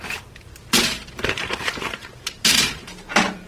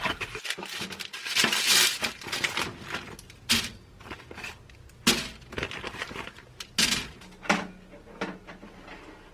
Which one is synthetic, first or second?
first